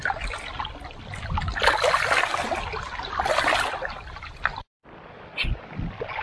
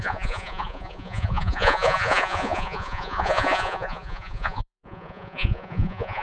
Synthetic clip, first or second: second